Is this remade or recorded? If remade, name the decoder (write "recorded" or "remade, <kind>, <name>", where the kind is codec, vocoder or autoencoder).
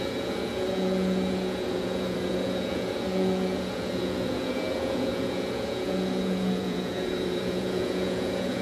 remade, vocoder, Vocos